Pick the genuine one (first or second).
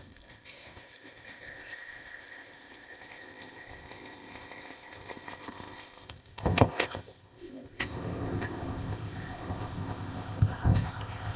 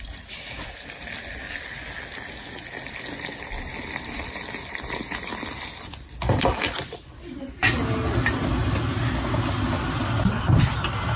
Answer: second